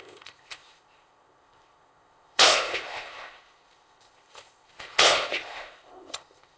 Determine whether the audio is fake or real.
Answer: fake